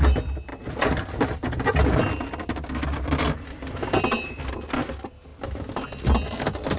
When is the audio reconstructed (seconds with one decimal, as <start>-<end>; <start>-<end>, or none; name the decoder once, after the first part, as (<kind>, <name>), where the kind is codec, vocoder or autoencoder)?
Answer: none